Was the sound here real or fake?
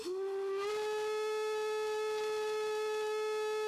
real